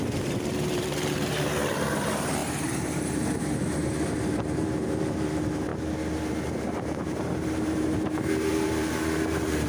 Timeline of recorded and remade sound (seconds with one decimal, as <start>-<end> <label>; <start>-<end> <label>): 0.0-5.7 remade; 5.7-6.3 recorded; 6.3-9.7 remade